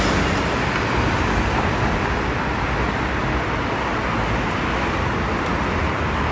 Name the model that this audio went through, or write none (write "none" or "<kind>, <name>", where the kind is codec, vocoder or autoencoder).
none